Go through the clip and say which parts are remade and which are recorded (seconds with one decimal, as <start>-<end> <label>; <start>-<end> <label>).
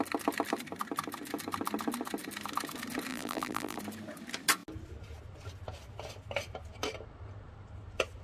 0.0-3.1 recorded; 3.1-3.8 remade; 3.8-8.2 recorded